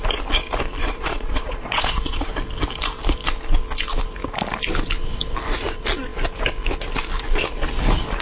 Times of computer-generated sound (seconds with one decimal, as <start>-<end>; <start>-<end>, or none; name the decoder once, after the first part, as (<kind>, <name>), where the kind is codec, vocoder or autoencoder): 0.8-2.3 (vocoder, Vocos)